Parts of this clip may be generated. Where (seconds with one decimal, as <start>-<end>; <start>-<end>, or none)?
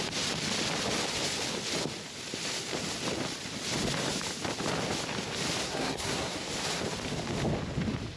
5.6-6.5